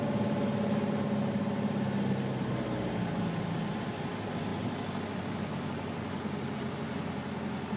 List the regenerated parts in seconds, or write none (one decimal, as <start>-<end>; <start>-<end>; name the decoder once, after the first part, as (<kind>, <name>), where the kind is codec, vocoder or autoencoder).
none